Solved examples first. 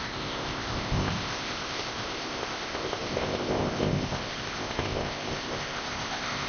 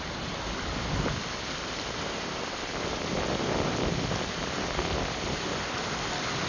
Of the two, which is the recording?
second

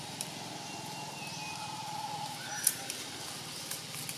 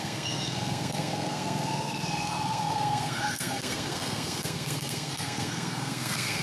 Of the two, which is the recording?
first